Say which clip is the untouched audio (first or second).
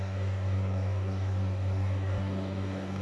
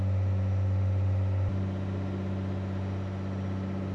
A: second